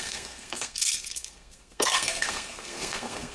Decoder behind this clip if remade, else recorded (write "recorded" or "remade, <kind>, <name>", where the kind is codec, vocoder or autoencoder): remade, codec, SNAC